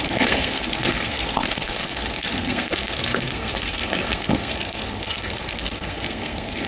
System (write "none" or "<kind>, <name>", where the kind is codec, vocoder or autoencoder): codec, SNAC